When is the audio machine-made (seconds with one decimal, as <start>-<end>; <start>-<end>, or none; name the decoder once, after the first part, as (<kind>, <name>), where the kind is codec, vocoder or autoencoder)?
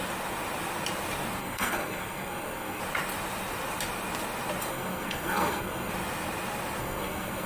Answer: 1.4-2.8 (codec, SNAC); 4.7-5.9; 6.8-7.5